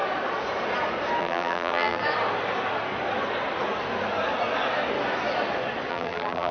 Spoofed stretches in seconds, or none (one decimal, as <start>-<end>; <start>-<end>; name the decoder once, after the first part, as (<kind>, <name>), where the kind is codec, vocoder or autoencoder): 1.2-2.0 (vocoder, BigVGAN v2); 5.9-6.5